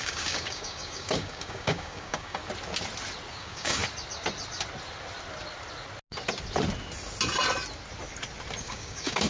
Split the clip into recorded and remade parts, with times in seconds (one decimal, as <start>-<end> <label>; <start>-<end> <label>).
0.0-2.4 remade; 2.4-3.3 recorded; 3.3-3.8 remade; 3.8-8.6 recorded; 8.6-9.3 remade